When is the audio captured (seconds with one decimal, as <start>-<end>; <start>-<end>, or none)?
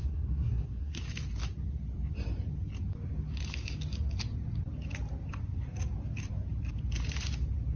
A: 1.0-7.8